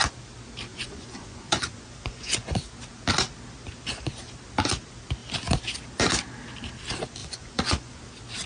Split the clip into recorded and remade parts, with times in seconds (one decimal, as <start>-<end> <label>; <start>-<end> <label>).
0.0-0.7 recorded; 0.7-2.6 remade; 2.6-7.2 recorded; 7.2-8.0 remade; 8.0-8.5 recorded